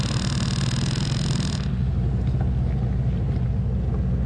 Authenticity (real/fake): real